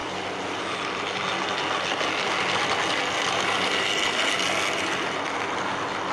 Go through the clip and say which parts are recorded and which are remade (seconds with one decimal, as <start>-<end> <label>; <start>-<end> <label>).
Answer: 0.0-6.1 recorded